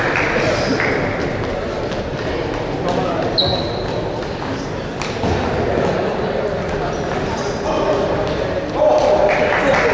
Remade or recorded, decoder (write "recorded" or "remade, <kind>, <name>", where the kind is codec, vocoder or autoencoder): recorded